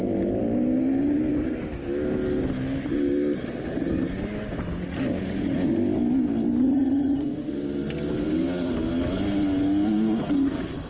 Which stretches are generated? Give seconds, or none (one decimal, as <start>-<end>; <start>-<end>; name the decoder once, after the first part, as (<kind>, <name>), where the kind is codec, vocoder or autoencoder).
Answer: 6.6-7.2 (vocoder, HiFi-GAN)